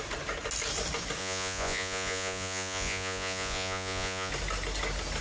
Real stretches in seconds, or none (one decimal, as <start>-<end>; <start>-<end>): 0.0-1.2; 4.3-5.2